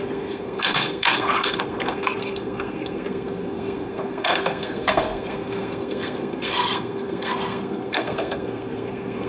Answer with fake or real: fake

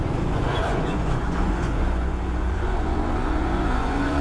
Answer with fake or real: fake